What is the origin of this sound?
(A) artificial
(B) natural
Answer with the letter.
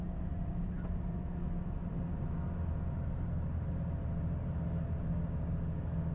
B